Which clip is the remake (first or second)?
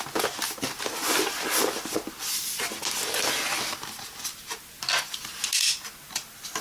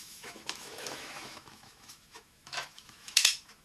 second